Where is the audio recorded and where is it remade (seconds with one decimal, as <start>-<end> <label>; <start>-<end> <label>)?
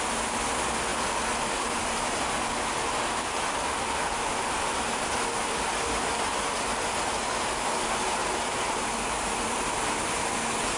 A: 0.0-8.2 recorded; 8.2-10.1 remade; 10.1-10.8 recorded